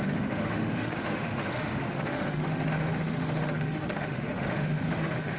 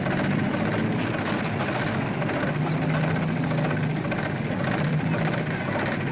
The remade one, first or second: first